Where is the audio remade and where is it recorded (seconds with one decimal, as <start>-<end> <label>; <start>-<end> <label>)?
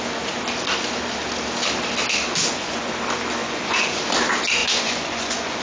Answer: 0.0-2.4 recorded; 2.4-2.9 remade; 2.9-3.4 recorded; 3.4-4.0 remade; 4.0-4.6 recorded; 4.6-5.6 remade